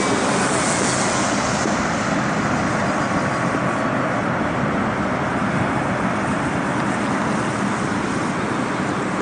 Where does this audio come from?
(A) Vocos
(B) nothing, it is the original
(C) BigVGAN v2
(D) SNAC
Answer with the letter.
B